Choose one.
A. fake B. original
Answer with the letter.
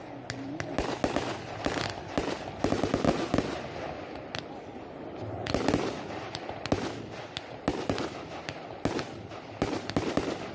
B